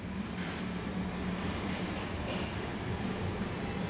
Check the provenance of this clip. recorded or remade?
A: remade